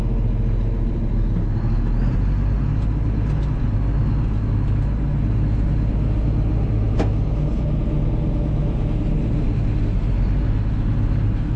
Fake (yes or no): no